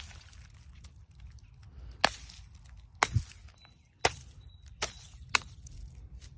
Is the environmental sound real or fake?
real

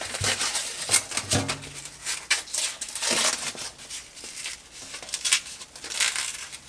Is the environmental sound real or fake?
real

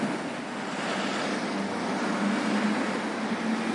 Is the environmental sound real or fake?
real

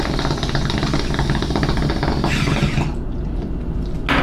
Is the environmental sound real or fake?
real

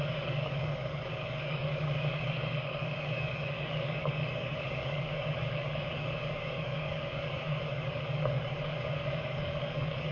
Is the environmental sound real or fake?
fake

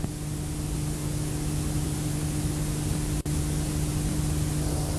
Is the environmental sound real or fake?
real